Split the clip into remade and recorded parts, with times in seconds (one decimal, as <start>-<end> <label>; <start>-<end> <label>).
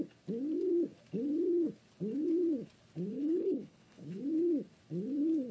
0.0-3.1 recorded; 3.1-4.2 remade; 4.2-5.5 recorded